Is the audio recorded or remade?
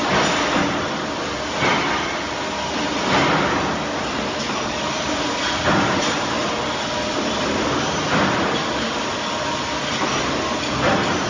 recorded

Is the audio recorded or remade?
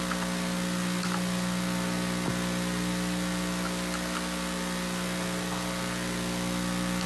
recorded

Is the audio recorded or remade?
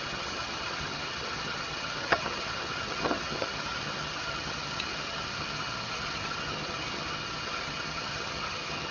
remade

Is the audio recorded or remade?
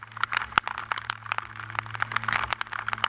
recorded